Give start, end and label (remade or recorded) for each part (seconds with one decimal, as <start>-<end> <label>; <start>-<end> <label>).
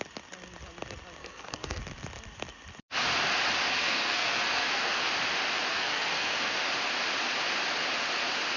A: 0.0-1.2 recorded; 1.2-1.8 remade; 1.8-3.7 recorded; 3.7-5.1 remade; 5.1-5.7 recorded; 5.7-6.6 remade; 6.6-8.6 recorded